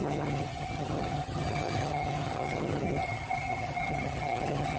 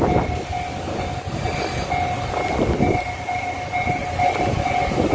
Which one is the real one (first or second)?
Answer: second